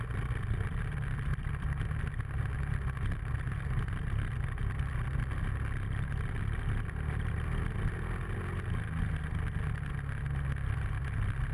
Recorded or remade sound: recorded